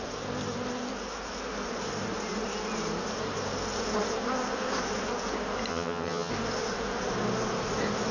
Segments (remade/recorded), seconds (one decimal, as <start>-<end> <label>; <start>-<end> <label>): 0.0-5.7 recorded; 5.7-6.3 remade; 6.3-8.1 recorded